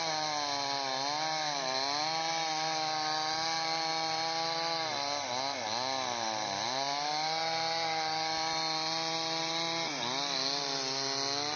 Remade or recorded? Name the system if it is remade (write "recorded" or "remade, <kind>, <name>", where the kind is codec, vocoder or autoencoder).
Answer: recorded